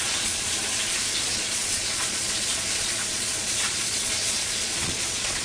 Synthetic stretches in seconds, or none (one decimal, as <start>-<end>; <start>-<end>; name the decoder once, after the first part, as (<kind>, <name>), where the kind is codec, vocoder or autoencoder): 0.0-0.6 (vocoder, Vocos); 1.2-5.4